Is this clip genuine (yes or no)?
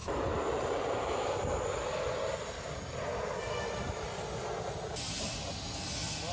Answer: yes